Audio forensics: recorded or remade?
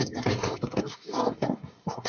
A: remade